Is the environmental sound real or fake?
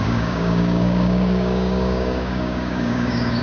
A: fake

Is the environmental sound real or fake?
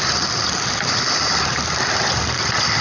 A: fake